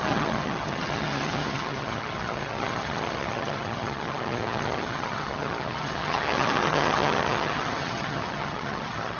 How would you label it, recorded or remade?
remade